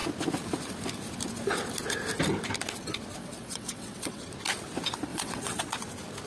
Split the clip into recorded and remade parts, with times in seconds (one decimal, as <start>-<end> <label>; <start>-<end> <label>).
0.0-3.2 recorded; 3.2-4.3 remade; 4.3-5.1 recorded; 5.1-5.6 remade; 5.6-6.3 recorded